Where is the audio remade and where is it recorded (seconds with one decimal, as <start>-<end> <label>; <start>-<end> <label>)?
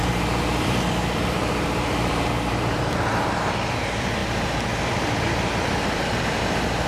0.0-4.2 remade; 4.2-4.8 recorded; 4.8-6.9 remade